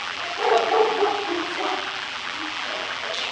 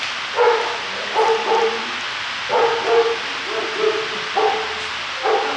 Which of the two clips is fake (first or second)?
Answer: first